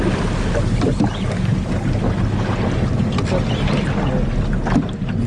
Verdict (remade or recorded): recorded